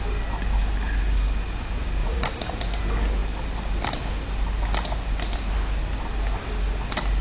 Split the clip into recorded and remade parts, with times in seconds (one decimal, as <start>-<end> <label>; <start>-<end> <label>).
0.0-2.0 recorded; 2.0-2.6 remade; 2.6-7.2 recorded